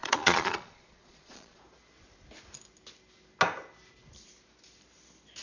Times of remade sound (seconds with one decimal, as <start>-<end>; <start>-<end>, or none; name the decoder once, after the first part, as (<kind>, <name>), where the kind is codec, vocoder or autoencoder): 0.0-1.6 (vocoder, Vocos)